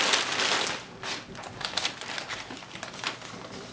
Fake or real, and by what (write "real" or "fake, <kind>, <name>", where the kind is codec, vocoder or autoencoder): real